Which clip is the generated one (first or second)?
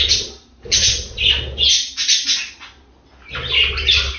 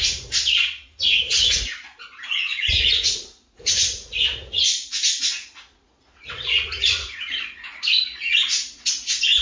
second